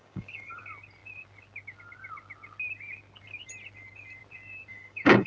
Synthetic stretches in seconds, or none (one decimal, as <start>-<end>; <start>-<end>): 0.0-0.6; 4.7-5.3